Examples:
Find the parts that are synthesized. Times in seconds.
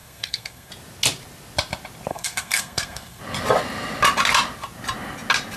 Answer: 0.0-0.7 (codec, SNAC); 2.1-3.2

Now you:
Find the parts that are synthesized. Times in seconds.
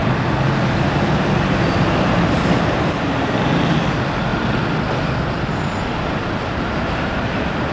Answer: 0.6-4.3 (vocoder, BigVGAN v2); 6.4-7.7